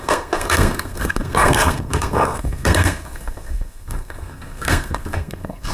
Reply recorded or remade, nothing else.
remade